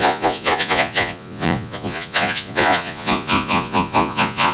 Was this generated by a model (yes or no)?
yes